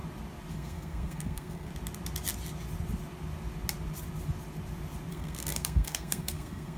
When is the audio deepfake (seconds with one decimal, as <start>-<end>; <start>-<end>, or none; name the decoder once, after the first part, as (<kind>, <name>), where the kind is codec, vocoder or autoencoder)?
0.5-1.7 (codec, SNAC); 5.1-6.8